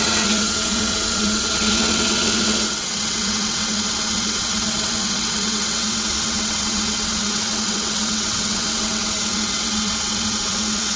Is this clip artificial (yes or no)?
yes